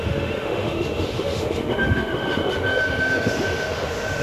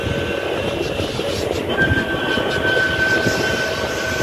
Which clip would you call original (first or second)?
second